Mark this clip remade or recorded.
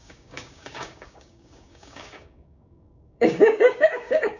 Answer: remade